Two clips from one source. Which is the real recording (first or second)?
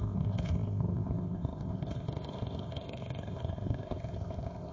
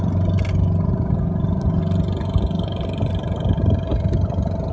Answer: second